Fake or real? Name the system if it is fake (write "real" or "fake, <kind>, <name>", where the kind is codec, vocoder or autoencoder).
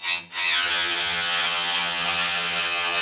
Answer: fake, vocoder, HiFi-GAN